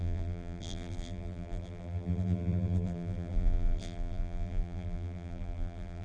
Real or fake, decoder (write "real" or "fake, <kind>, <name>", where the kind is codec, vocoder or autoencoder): fake, vocoder, BigVGAN v2